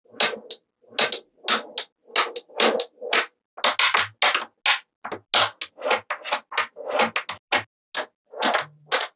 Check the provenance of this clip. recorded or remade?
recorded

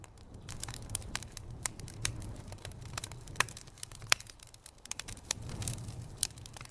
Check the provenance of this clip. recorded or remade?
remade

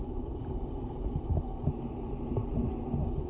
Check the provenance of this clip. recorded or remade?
recorded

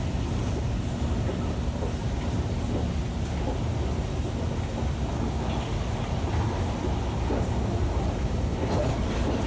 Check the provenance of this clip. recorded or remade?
recorded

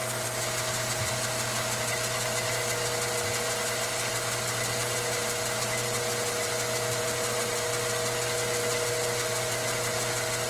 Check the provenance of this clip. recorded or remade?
recorded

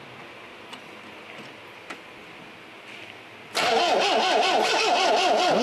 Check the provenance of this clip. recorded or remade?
recorded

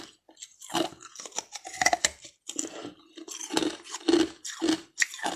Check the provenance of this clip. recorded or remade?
recorded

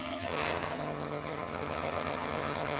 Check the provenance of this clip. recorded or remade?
remade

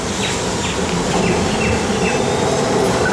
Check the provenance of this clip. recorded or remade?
recorded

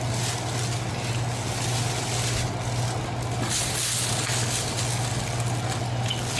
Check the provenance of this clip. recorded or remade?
recorded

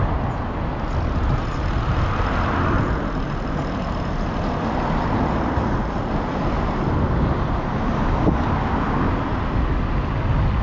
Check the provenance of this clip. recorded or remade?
recorded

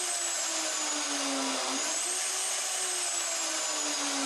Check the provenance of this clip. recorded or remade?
recorded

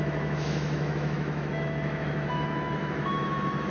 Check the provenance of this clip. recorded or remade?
remade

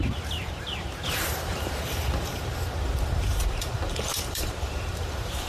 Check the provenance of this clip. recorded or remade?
remade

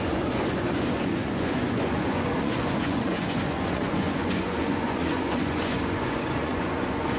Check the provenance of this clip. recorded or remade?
remade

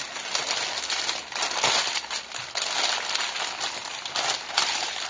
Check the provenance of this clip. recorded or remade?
recorded